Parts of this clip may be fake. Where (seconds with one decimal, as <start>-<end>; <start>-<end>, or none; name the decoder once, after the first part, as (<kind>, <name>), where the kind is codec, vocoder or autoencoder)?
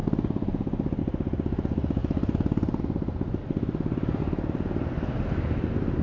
2.0-2.8 (vocoder, BigVGAN v2); 3.4-4.2